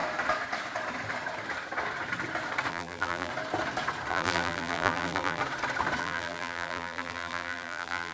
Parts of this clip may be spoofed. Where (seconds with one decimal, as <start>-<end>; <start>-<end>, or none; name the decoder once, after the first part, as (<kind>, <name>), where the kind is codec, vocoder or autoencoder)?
2.7-3.3 (vocoder, BigVGAN v2); 4.1-5.4; 6.0-8.1